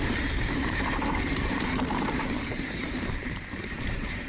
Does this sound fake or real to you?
fake